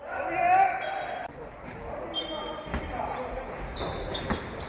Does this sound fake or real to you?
real